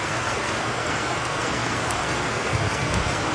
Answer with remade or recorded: remade